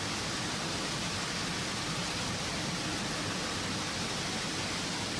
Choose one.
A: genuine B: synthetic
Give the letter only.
A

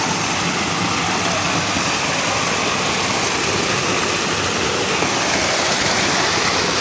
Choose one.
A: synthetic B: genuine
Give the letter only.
B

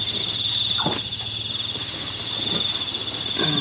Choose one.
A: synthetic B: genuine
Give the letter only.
B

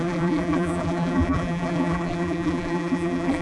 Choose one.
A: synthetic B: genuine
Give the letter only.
A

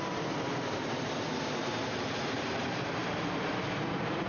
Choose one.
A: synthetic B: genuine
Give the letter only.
A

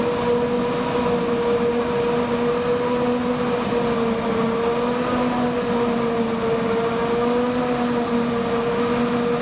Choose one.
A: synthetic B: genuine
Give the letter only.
B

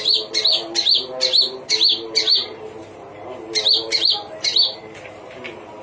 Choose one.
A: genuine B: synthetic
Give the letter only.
A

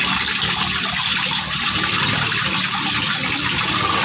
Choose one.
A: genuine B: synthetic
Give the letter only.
B